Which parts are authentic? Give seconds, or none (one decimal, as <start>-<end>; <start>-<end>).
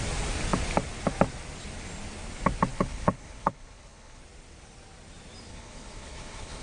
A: 0.0-2.7; 4.2-5.5